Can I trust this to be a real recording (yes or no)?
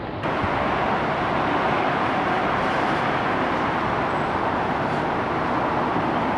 yes